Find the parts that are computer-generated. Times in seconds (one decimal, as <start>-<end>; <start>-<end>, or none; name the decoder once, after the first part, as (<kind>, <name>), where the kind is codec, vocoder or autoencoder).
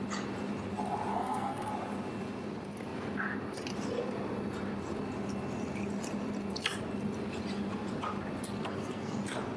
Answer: 1.1-1.7 (codec, SNAC); 8.6-9.2